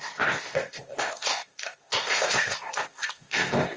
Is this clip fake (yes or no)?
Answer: yes